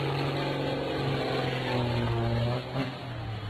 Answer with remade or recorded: recorded